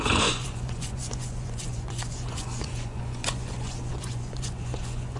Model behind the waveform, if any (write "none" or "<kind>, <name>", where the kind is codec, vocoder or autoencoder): vocoder, Vocos